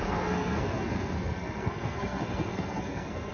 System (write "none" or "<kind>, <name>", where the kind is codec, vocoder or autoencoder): codec, SNAC